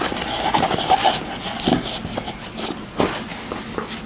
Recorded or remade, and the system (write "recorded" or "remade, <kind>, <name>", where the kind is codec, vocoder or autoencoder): recorded